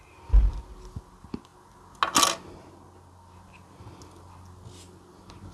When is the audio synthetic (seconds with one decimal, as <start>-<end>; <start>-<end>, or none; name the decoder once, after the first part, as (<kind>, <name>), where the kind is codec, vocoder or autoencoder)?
none